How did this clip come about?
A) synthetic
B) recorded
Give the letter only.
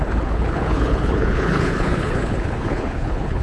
A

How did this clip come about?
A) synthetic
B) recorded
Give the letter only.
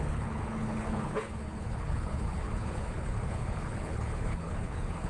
A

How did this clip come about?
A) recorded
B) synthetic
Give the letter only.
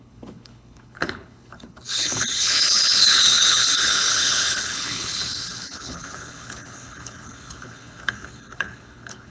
B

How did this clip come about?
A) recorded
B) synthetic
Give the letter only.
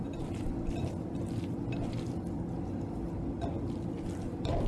A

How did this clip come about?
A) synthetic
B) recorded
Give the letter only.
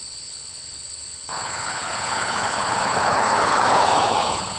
A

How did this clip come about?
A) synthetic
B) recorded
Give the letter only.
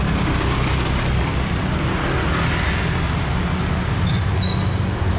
B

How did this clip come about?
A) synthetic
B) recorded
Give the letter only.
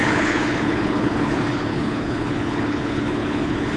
A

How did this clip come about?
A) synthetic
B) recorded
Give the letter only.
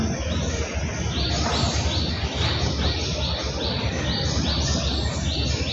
B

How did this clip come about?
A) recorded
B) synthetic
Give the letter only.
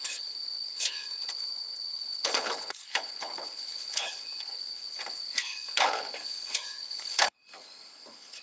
B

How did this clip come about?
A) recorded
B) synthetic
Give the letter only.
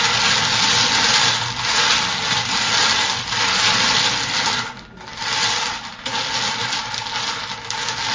A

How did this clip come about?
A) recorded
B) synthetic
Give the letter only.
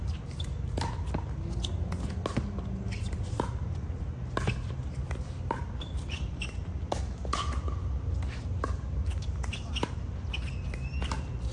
A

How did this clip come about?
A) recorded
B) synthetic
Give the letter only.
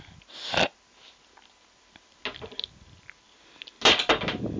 A